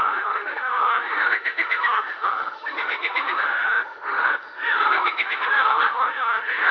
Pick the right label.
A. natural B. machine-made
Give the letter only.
B